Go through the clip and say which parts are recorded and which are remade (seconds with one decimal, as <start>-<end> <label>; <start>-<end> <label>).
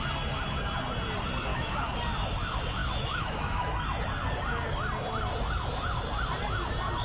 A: 0.0-1.5 recorded; 1.5-2.0 remade; 2.0-2.8 recorded; 2.8-3.7 remade; 3.7-7.0 recorded